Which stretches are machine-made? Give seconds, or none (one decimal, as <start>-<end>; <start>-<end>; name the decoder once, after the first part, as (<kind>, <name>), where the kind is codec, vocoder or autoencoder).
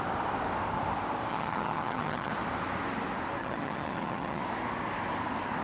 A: 1.3-2.3 (vocoder, HiFi-GAN); 3.4-4.4